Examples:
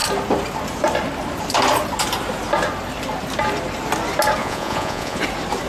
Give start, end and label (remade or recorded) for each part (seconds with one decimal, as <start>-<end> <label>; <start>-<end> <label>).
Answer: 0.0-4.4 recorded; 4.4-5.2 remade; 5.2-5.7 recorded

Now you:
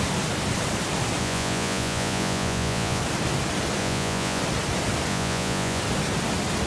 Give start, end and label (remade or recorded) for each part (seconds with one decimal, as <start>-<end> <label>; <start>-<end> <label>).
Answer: 0.0-1.2 recorded; 1.2-3.0 remade; 3.0-3.8 recorded; 3.8-4.4 remade; 4.4-5.1 recorded; 5.1-5.8 remade; 5.8-6.7 recorded

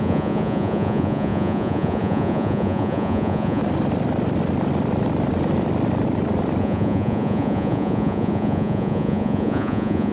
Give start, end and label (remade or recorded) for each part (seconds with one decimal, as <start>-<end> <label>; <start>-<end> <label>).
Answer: 0.0-3.6 remade; 3.6-6.6 recorded; 6.6-10.1 remade

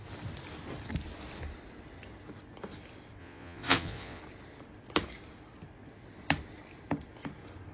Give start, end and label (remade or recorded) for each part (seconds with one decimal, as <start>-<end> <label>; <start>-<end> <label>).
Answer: 0.0-3.2 recorded; 3.2-4.2 remade; 4.2-7.7 recorded

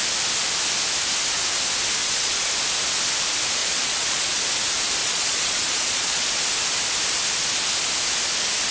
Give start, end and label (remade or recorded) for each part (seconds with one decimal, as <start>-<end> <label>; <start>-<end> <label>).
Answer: 0.0-2.0 recorded; 2.0-2.5 remade; 2.5-3.6 recorded; 3.6-4.4 remade; 4.4-5.0 recorded; 5.0-6.2 remade; 6.2-8.7 recorded

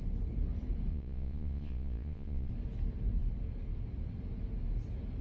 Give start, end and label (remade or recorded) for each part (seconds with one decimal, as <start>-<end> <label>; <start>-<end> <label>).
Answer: 0.0-0.9 recorded; 0.9-2.5 remade; 2.5-5.2 recorded

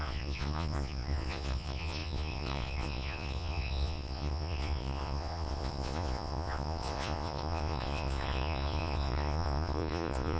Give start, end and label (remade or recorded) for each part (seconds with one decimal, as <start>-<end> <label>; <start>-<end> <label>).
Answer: 0.0-10.4 remade

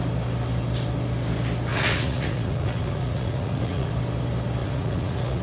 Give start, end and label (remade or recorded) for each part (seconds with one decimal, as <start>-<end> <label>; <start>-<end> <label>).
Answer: 0.0-1.7 recorded; 1.7-3.9 remade; 3.9-4.6 recorded; 4.6-5.4 remade